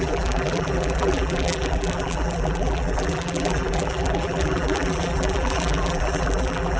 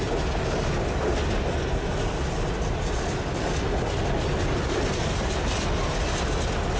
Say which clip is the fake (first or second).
first